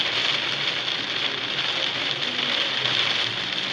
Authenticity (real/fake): real